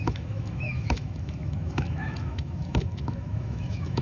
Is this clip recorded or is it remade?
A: remade